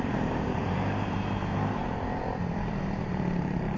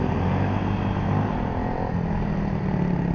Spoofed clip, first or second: first